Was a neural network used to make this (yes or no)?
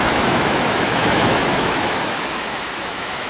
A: yes